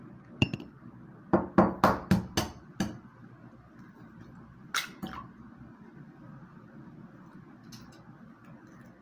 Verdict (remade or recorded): recorded